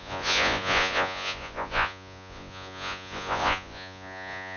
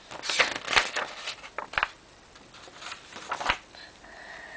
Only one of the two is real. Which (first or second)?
second